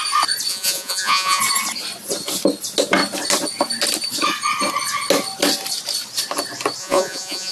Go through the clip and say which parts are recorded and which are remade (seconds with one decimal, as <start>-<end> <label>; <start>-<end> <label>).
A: 0.0-0.5 recorded; 0.5-1.4 remade; 1.4-6.8 recorded; 6.8-7.5 remade